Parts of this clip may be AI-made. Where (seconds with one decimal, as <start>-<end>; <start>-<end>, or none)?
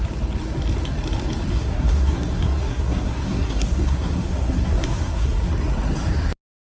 1.5-5.5